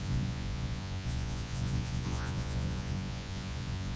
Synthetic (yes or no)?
yes